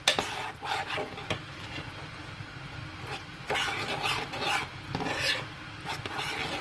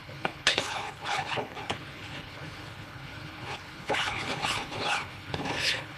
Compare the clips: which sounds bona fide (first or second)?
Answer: first